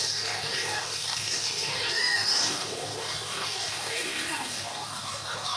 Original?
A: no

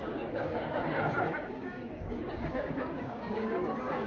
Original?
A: no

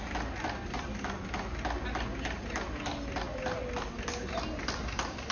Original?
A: yes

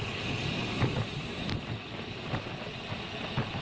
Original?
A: yes